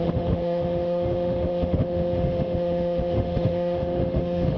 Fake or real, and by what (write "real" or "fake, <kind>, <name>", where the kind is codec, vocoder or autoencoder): fake, autoencoder, DAC-VAE